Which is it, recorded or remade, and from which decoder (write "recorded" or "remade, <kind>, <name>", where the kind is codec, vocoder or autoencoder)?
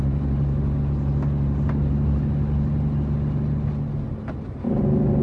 recorded